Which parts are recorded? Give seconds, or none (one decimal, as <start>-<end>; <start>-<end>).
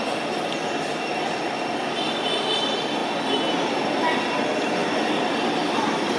0.0-0.9; 2.0-4.8; 5.7-6.2